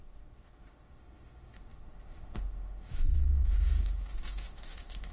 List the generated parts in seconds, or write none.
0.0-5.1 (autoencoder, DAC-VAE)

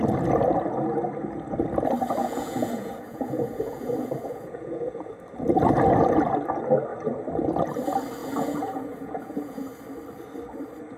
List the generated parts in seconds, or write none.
2.2-5.1 (vocoder, Vocos); 8.2-9.7